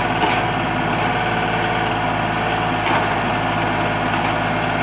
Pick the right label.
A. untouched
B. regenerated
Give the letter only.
A